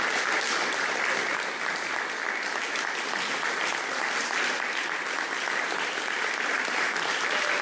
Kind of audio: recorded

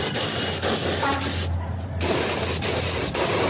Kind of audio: recorded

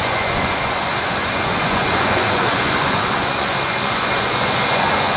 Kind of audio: remade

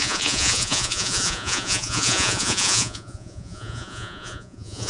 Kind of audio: remade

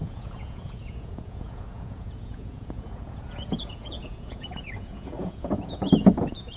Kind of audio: remade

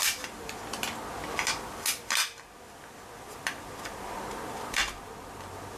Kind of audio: recorded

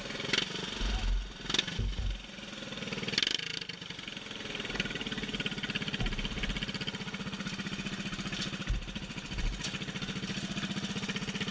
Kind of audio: recorded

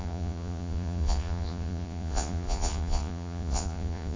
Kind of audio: remade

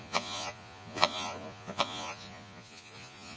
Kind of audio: remade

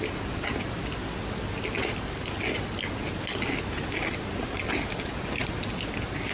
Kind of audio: recorded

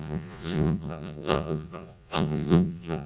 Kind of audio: remade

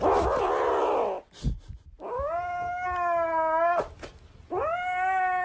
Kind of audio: recorded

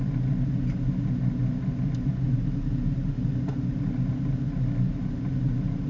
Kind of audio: recorded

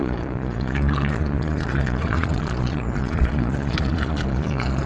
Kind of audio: remade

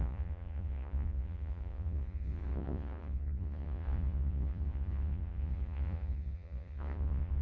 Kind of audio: remade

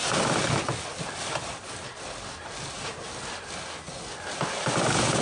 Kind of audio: recorded